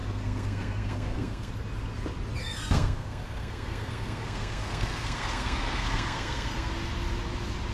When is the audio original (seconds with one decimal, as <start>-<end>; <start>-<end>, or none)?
1.5-2.4; 6.7-7.7